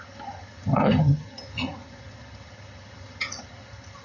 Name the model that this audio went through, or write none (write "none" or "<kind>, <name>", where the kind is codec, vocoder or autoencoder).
vocoder, HiFi-GAN